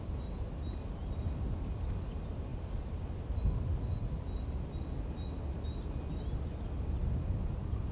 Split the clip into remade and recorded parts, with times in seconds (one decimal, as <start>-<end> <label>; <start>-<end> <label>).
0.0-2.5 recorded; 2.5-3.0 remade; 3.0-7.9 recorded